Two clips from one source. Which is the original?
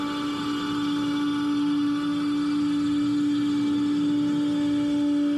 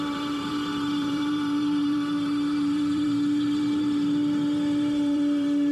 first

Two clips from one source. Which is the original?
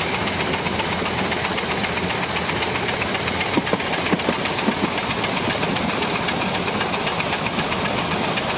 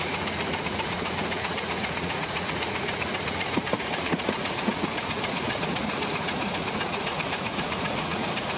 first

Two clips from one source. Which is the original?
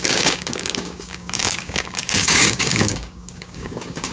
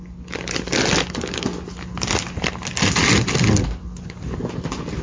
second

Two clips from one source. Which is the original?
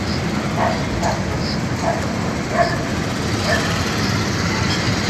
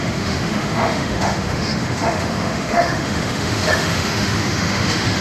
first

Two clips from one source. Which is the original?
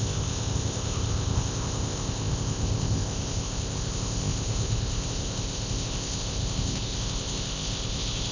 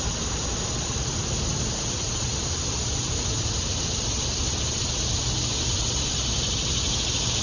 second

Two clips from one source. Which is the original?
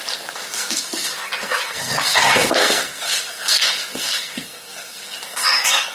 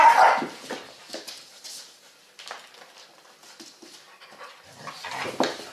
second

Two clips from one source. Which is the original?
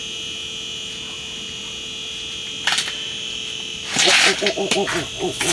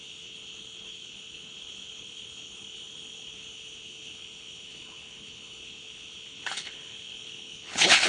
first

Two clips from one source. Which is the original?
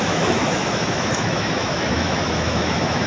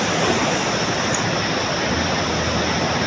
second